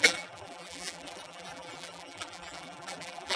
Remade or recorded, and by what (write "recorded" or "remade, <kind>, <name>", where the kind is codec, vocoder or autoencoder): remade, vocoder, BigVGAN v2